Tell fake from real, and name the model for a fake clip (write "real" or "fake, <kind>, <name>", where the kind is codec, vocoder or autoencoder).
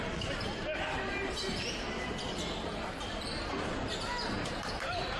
real